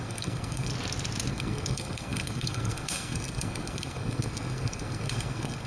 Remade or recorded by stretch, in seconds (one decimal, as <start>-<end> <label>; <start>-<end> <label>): 0.0-0.7 remade; 0.7-1.3 recorded; 1.3-5.7 remade